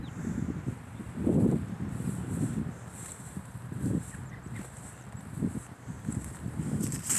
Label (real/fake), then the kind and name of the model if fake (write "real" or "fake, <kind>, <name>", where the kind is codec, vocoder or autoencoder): fake, vocoder, BigVGAN v2